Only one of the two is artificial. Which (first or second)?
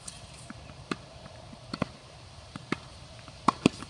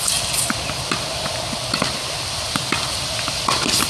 first